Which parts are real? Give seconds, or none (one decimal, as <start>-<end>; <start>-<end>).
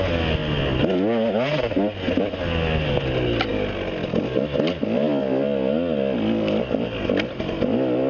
0.0-8.1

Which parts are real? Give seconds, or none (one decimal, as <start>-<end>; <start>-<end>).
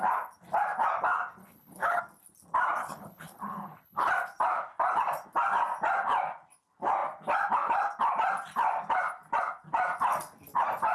0.0-1.4; 2.0-2.8; 4.1-10.9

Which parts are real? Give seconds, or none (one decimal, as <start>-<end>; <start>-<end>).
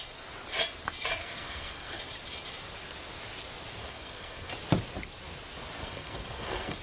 0.0-1.2; 2.0-3.8; 4.5-5.8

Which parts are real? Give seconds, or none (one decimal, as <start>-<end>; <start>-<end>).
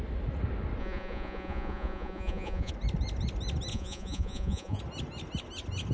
0.0-0.8; 2.7-3.7; 4.8-5.9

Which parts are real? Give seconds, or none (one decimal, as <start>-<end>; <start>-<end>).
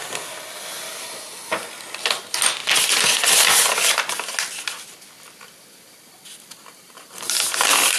0.0-8.0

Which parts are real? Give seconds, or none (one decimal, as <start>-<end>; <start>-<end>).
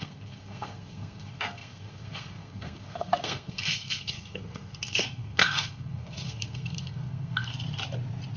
7.5-8.4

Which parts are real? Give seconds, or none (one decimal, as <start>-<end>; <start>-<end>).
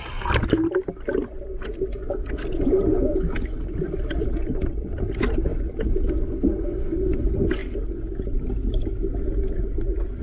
0.0-10.2